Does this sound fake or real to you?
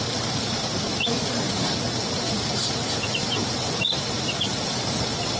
fake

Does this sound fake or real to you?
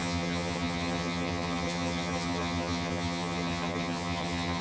fake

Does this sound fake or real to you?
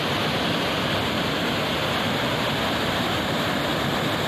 real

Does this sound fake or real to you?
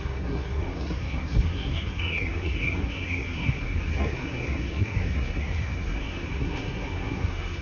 fake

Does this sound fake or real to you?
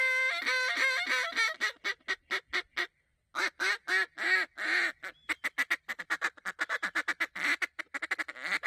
real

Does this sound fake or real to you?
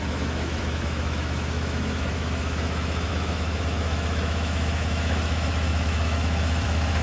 fake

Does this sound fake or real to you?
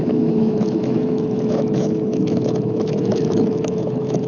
fake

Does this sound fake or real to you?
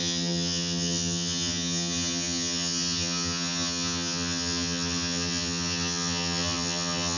fake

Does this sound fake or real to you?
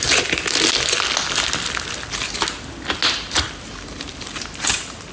real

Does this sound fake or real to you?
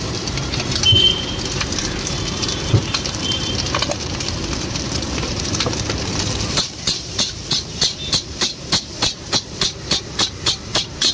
fake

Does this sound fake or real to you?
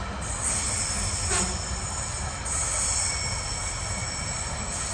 real